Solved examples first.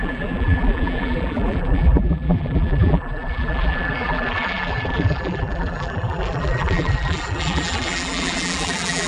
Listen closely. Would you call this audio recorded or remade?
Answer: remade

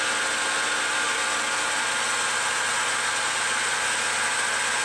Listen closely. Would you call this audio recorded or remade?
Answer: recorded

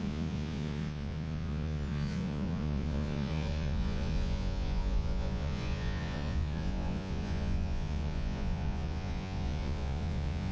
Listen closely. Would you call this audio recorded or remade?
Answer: remade